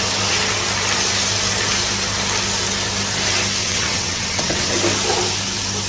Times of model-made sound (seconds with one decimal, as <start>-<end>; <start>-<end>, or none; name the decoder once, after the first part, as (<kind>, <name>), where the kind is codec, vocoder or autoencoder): 3.6-4.7 (vocoder, WaveNeXt)